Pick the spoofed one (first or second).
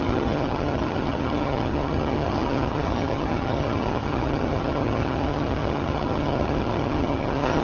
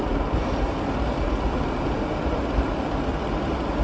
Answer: first